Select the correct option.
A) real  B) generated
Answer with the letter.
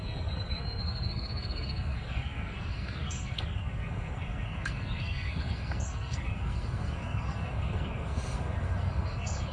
B